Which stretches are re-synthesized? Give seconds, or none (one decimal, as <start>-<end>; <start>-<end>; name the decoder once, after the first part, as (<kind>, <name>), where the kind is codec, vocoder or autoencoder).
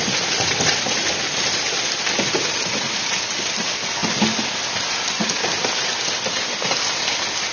none